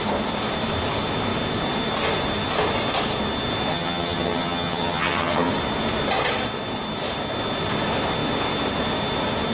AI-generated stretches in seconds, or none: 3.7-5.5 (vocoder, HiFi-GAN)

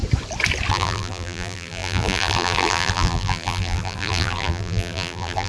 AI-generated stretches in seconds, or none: 0.7-5.5 (vocoder, BigVGAN v2)

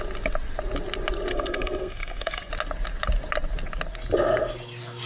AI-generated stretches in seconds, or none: 1.3-2.5 (codec, SNAC)

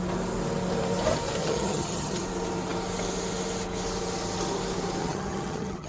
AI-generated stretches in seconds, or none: 1.4-2.2 (vocoder, HiFi-GAN); 5.0-5.9